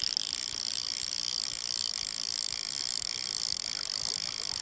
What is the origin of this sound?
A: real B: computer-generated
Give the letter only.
A